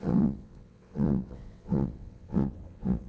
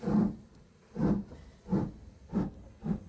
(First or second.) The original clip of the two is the second